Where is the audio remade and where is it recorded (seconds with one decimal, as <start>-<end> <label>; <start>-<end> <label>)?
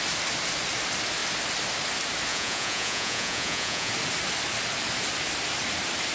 0.0-2.3 recorded; 2.3-3.9 remade; 3.9-6.1 recorded